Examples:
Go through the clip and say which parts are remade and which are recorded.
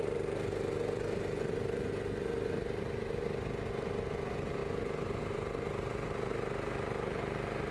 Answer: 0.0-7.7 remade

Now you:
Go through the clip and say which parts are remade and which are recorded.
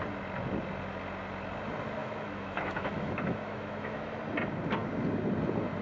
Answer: 0.0-2.0 recorded; 2.0-4.2 remade; 4.2-5.8 recorded